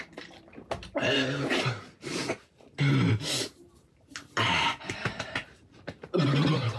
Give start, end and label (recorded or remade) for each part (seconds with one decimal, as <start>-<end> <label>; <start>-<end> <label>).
0.0-6.8 remade